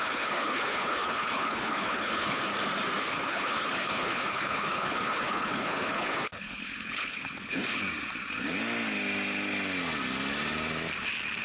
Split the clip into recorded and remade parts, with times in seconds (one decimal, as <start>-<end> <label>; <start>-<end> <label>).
0.0-2.5 remade; 2.5-3.0 recorded; 3.0-7.8 remade; 7.8-11.4 recorded